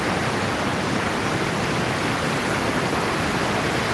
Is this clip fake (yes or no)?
no